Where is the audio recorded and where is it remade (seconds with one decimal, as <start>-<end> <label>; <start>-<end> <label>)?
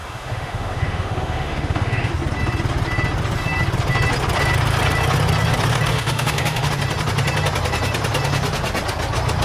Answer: 0.0-2.1 remade; 2.1-5.9 recorded; 5.9-6.7 remade; 6.7-9.4 recorded